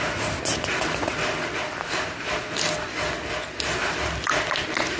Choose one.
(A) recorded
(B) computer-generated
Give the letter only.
A